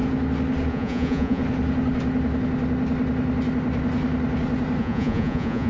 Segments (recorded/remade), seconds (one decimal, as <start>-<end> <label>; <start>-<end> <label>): 0.0-0.7 recorded; 0.7-1.4 remade; 1.4-4.8 recorded; 4.8-5.7 remade